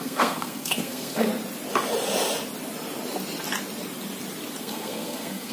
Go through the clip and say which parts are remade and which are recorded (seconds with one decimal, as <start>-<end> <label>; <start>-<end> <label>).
0.0-1.3 remade; 1.3-4.6 recorded; 4.6-5.5 remade